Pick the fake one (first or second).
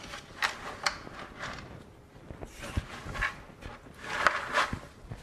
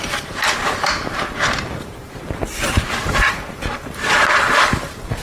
second